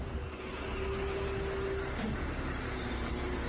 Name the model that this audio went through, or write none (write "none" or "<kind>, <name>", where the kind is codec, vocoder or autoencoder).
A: none